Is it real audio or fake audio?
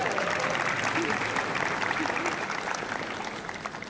real